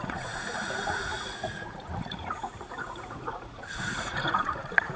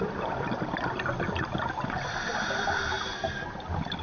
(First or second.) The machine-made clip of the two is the first